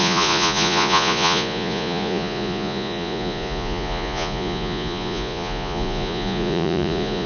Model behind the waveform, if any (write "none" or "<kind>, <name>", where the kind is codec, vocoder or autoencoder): vocoder, Vocos